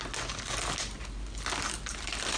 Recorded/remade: recorded